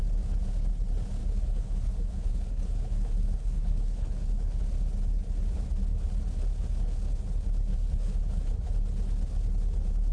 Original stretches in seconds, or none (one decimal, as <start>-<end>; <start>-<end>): 0.0-1.2; 4.6-7.7; 8.7-10.1